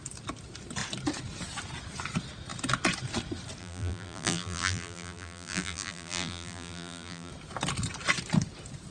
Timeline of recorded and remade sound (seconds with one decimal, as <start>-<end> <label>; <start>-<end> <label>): 0.0-3.6 recorded; 3.6-7.3 remade; 7.3-8.9 recorded